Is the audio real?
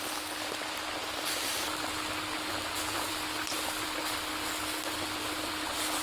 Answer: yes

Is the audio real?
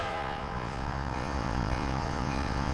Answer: no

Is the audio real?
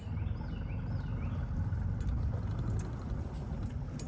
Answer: yes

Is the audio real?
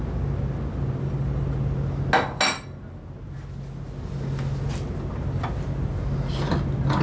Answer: yes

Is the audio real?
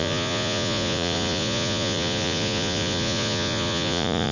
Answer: no